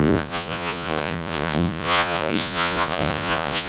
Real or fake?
fake